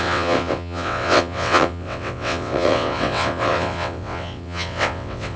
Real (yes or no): no